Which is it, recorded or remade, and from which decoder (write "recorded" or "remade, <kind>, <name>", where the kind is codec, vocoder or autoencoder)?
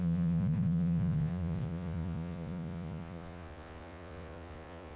remade, vocoder, Vocos